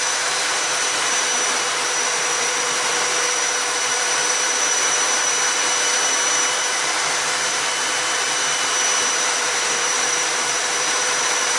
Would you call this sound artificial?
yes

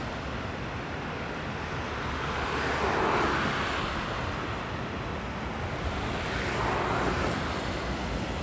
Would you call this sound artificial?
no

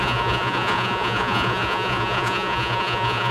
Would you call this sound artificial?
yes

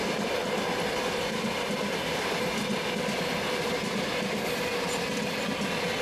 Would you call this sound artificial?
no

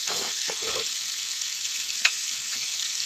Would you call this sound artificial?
yes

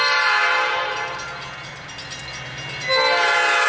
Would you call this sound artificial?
no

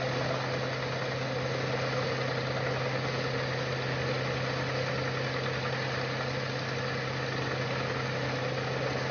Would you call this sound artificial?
no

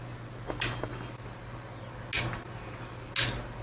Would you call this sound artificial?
no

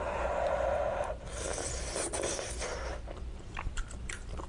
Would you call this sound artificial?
yes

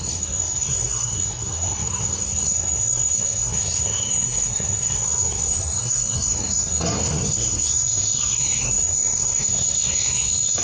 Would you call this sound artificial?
yes